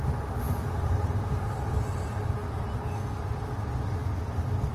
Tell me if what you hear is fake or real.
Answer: real